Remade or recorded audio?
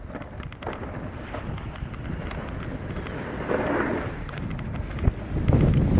recorded